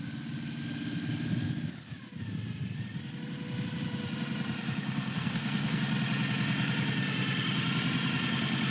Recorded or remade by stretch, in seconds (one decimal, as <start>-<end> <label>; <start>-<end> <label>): 0.0-4.8 recorded; 4.8-5.8 remade; 5.8-8.7 recorded